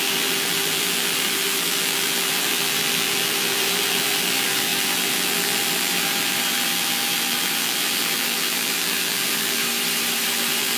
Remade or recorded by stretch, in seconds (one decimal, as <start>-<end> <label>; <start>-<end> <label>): 0.0-9.6 remade; 9.6-10.3 recorded; 10.3-10.8 remade